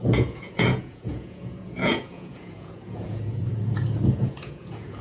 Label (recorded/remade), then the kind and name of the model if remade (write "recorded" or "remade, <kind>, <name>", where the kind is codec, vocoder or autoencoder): remade, vocoder, Vocos